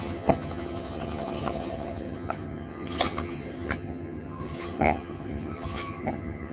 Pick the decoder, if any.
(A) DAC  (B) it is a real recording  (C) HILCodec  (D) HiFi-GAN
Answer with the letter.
D